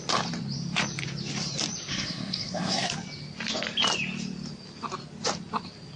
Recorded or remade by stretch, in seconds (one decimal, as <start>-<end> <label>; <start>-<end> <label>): 0.0-1.9 recorded; 1.9-2.9 remade; 2.9-6.0 recorded